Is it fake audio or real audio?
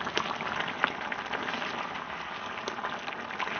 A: real